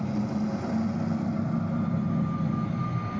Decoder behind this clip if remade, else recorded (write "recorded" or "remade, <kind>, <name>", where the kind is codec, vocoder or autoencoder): recorded